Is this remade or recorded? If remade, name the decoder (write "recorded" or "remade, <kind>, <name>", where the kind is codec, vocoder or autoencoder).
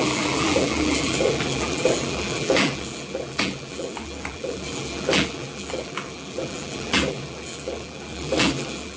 remade, vocoder, BigVGAN v2